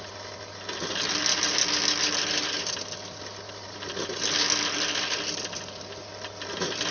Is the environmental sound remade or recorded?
recorded